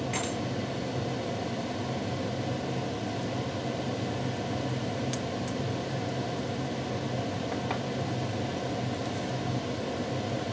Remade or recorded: recorded